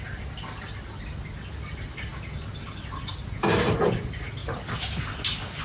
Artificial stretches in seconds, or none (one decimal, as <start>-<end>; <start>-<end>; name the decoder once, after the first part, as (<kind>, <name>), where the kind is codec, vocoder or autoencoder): none

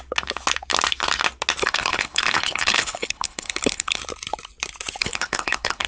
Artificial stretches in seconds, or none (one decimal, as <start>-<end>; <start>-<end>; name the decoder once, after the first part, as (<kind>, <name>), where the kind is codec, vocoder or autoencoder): 1.6-4.0 (codec, HILCodec); 5.0-5.9

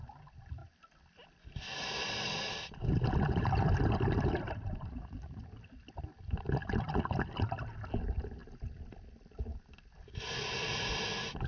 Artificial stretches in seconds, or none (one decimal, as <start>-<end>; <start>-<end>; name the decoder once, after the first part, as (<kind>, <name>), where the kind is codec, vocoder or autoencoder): none

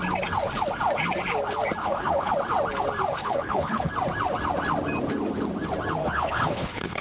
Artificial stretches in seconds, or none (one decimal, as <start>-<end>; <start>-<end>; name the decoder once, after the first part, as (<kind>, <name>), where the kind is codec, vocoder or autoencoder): 1.8-2.3 (codec, HILCodec); 3.2-3.9; 6.0-7.0

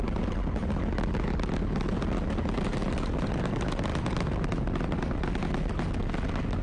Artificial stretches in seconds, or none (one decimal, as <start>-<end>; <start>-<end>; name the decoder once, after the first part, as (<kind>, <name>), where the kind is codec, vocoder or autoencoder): none

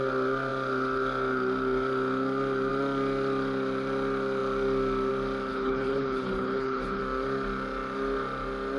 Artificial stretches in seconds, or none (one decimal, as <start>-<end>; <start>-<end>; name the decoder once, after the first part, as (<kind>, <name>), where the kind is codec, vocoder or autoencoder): 5.5-7.0 (codec, HILCodec)

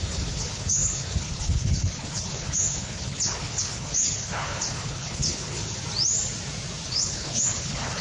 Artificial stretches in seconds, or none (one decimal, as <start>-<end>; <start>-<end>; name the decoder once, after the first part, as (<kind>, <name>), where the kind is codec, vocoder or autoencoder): 0.0-5.8 (codec, HILCodec); 6.9-8.0

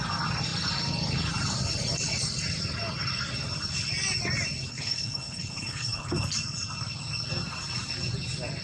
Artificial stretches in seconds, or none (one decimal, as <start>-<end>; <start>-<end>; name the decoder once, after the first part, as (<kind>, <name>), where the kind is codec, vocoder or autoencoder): 4.7-6.1 (codec, HILCodec)